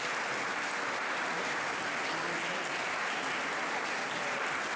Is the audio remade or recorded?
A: recorded